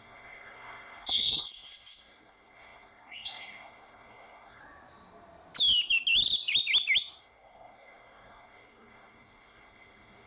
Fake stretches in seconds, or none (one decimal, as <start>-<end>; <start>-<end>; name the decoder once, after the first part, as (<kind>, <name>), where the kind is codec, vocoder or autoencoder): 0.0-4.6 (codec, SNAC); 7.2-10.3